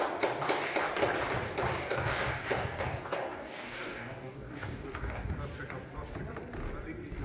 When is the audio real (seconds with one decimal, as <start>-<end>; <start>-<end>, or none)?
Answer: 0.0-1.8; 5.3-7.2